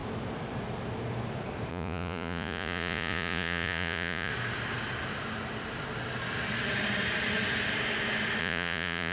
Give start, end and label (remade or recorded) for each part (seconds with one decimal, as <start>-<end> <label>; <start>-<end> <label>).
0.0-1.7 recorded; 1.7-4.3 remade; 4.3-8.4 recorded; 8.4-9.1 remade

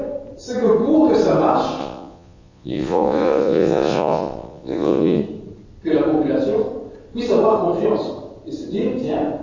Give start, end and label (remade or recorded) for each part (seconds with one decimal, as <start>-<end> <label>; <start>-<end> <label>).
0.0-1.8 recorded; 1.8-5.2 remade; 5.2-9.4 recorded

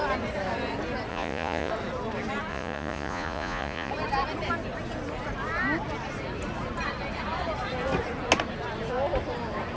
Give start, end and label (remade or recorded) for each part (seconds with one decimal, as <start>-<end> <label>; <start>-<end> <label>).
0.0-1.1 recorded; 1.1-1.7 remade; 1.7-2.5 recorded; 2.5-3.9 remade; 3.9-9.8 recorded

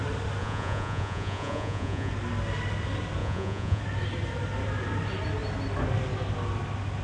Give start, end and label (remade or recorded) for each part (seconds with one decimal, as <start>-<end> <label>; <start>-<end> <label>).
0.0-0.4 recorded; 0.4-2.1 remade; 2.1-3.2 recorded; 3.2-3.8 remade; 3.8-7.0 recorded